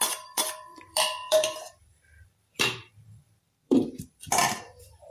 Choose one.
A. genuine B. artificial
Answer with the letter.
B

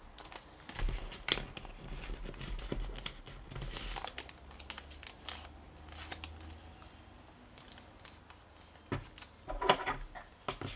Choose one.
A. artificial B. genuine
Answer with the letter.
B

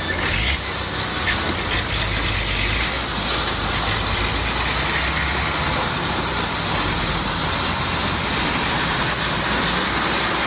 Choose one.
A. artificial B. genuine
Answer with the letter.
B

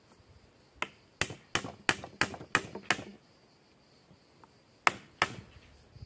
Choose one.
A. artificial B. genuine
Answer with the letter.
B